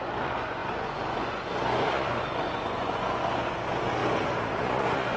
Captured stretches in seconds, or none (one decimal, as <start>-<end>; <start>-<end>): 4.0-4.6